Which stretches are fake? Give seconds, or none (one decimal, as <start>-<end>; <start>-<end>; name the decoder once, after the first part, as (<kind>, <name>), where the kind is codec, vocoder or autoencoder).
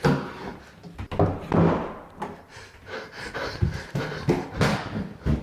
4.7-5.4 (codec, DAC)